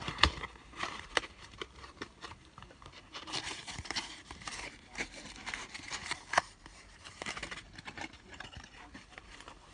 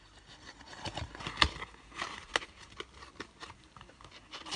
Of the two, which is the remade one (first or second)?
first